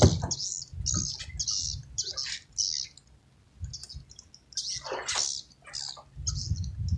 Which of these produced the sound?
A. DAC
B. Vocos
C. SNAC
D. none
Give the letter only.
D